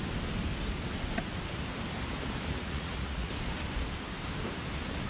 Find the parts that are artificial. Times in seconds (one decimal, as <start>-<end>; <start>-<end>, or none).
2.6-3.3